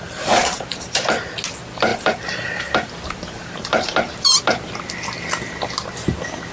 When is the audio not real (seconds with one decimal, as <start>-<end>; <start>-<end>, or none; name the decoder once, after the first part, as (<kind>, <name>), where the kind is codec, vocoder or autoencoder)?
0.4-1.0 (vocoder, BigVGAN v2); 1.9-4.4